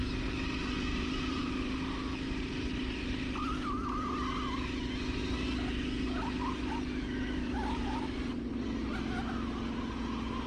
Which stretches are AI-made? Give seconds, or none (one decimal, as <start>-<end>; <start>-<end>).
0.9-1.5; 7.4-8.5